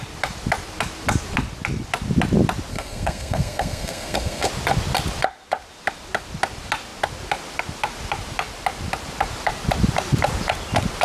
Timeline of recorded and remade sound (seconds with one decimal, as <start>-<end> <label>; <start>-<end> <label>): 0.0-2.7 recorded; 2.7-4.5 remade; 4.5-11.0 recorded

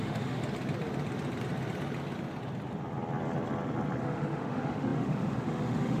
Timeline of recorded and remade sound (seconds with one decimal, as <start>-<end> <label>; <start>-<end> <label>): 0.0-0.4 remade; 0.4-4.0 recorded; 4.0-6.0 remade

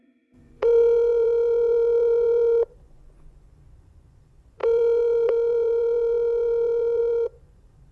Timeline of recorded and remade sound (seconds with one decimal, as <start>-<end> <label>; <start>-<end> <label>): 0.0-7.9 remade

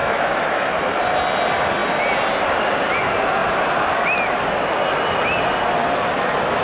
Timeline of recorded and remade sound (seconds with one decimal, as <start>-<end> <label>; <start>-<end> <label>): 0.0-1.0 remade; 1.0-6.6 recorded

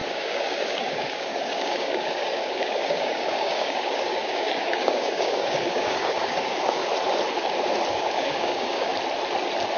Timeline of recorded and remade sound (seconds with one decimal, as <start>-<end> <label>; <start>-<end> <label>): 0.0-6.8 remade; 6.8-7.9 recorded; 7.9-8.9 remade; 8.9-9.8 recorded